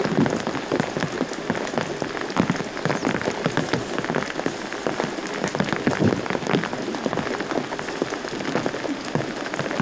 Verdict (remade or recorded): recorded